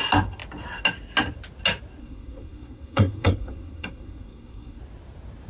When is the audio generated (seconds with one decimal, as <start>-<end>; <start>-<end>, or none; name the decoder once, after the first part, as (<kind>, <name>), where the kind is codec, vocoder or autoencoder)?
2.0-4.8 (codec, SNAC)